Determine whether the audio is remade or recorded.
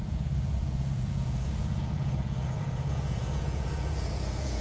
remade